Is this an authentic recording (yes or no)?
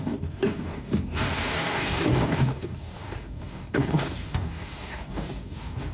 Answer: no